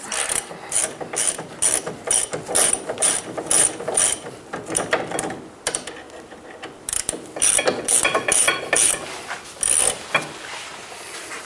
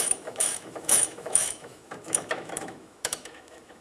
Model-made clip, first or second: second